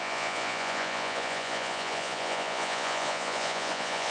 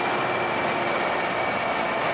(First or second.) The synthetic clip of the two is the first